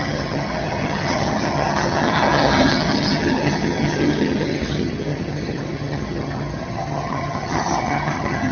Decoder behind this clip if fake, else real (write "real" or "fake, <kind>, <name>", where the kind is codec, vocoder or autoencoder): fake, vocoder, HiFi-GAN